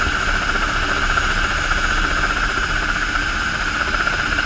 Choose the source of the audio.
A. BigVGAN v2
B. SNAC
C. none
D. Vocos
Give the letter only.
C